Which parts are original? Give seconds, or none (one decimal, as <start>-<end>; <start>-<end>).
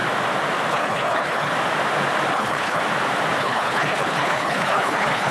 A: 0.0-0.7; 1.5-2.3; 2.8-3.4